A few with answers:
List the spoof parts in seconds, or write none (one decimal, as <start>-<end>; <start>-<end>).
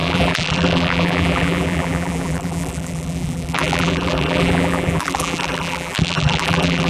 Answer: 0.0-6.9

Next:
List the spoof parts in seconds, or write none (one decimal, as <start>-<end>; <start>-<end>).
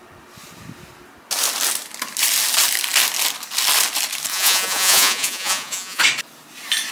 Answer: 4.3-6.0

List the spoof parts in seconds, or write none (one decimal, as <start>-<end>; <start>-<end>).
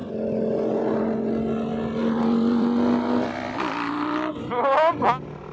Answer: 2.0-4.3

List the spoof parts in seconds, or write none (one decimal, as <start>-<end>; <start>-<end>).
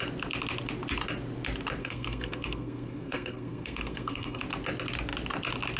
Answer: 1.8-4.4